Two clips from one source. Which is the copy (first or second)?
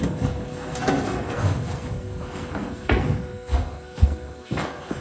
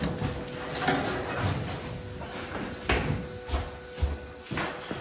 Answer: first